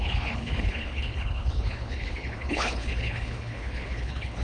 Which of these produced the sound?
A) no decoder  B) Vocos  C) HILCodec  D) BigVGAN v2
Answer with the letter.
C